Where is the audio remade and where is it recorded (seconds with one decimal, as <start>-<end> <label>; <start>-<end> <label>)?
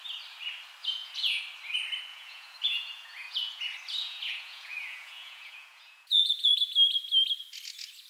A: 0.0-0.8 recorded; 0.8-1.4 remade; 1.4-2.1 recorded; 2.1-3.6 remade; 3.6-4.0 recorded; 4.0-6.5 remade; 6.5-8.1 recorded